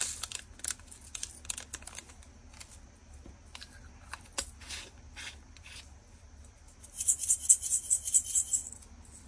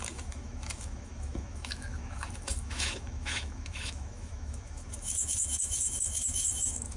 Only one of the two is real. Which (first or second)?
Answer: first